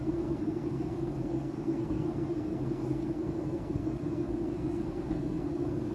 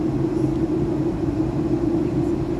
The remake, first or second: first